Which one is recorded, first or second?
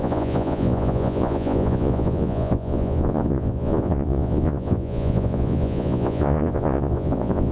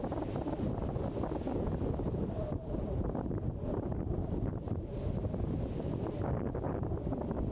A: second